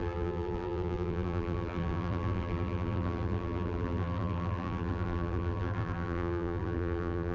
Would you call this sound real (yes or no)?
no